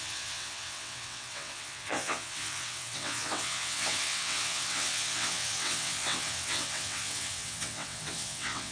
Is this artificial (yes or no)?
yes